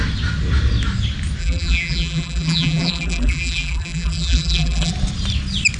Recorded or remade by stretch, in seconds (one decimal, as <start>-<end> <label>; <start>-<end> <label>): 0.0-1.4 recorded; 1.4-4.9 remade; 4.9-5.8 recorded

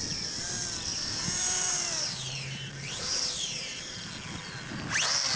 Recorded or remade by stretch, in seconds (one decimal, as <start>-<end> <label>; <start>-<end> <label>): 0.0-0.9 recorded; 0.9-4.1 remade; 4.1-5.4 recorded

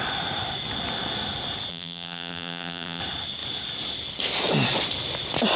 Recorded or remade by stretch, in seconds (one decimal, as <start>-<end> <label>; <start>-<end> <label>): 0.0-1.7 recorded; 1.7-3.0 remade; 3.0-5.6 recorded